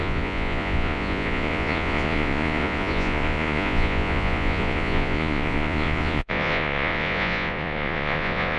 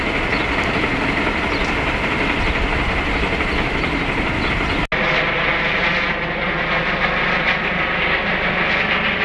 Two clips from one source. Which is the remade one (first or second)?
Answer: first